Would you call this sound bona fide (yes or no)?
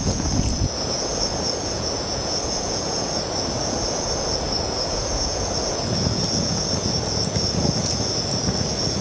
no